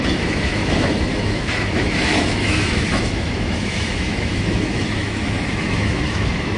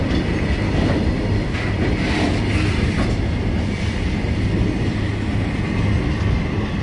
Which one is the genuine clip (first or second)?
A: second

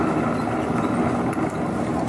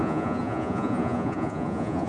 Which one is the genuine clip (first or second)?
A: first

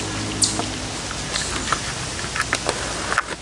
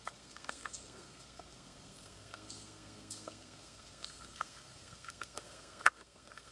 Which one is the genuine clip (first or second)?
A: first